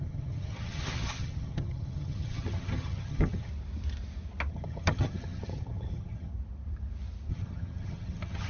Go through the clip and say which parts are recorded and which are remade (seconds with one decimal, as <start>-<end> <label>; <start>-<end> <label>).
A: 0.0-3.5 remade; 3.5-4.5 recorded; 4.5-6.3 remade; 6.3-7.3 recorded; 7.3-8.5 remade